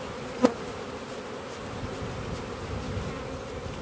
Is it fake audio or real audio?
real